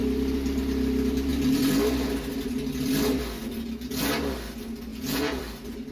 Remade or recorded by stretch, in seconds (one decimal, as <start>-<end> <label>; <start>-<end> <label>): 0.0-4.9 recorded; 4.9-5.4 remade; 5.4-5.9 recorded